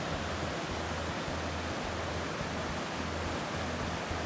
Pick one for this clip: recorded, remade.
recorded